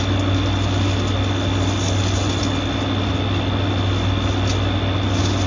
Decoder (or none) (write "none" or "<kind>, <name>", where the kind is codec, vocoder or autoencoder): none